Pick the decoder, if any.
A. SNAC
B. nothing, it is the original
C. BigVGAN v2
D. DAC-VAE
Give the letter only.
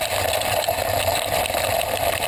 B